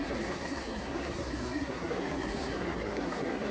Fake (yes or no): yes